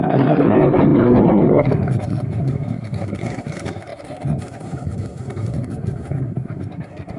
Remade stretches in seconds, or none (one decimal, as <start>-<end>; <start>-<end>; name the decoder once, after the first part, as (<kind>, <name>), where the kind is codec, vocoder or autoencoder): 0.0-7.2 (codec, SNAC)